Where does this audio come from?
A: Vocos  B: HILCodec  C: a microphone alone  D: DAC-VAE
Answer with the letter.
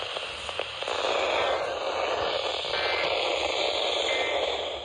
C